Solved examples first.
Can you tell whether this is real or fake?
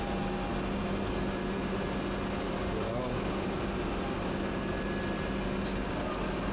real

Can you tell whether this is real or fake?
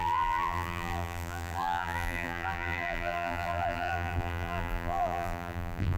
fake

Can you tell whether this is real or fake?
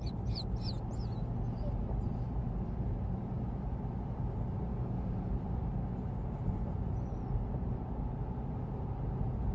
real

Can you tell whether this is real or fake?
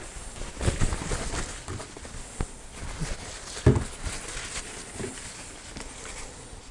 real